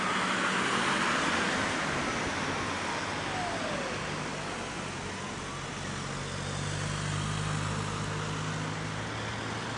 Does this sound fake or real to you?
real